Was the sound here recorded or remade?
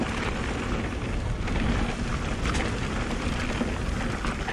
recorded